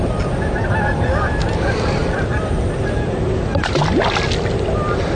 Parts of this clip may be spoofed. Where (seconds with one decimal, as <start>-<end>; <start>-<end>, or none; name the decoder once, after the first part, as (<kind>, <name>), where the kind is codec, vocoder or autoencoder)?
none